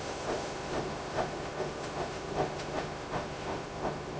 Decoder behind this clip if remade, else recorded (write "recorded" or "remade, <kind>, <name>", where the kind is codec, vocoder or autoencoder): remade, autoencoder, DAC-VAE